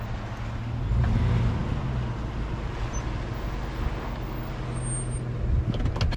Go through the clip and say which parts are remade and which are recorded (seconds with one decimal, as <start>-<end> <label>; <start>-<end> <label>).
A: 0.0-6.2 recorded